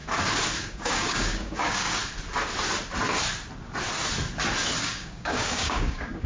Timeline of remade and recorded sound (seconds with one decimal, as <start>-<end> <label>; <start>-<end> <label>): 0.0-0.6 recorded; 0.6-2.0 remade; 2.0-4.8 recorded; 4.8-6.3 remade